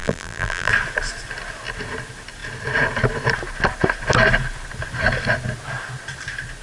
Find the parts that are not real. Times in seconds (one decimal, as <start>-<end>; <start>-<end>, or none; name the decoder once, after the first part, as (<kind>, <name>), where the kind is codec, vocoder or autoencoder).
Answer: 0.0-0.7 (vocoder, BigVGAN v2)